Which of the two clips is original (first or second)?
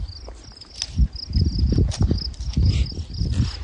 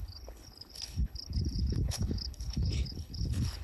first